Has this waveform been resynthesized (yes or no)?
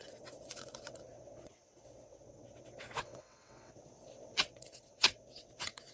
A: yes